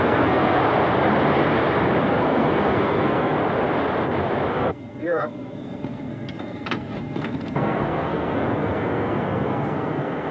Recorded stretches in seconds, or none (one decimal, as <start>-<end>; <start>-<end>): 0.6-2.0; 3.4-4.5